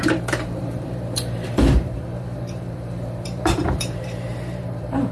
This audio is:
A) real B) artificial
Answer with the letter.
B